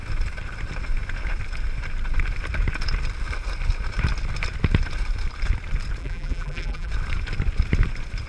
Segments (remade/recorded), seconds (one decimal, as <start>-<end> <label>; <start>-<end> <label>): 0.0-6.0 recorded; 6.0-6.9 remade; 6.9-8.3 recorded